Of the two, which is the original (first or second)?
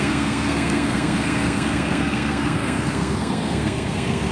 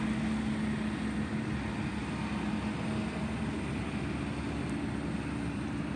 second